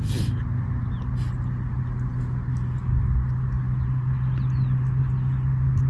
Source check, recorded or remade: recorded